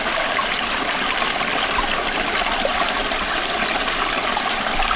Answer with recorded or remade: recorded